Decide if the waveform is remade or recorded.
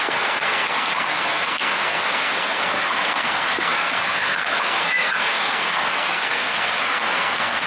remade